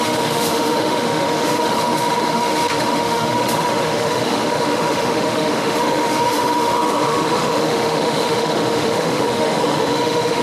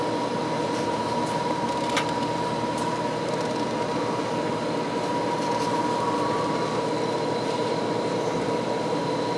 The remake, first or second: first